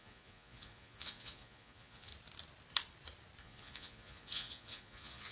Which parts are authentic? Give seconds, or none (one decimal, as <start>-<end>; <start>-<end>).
2.1-3.4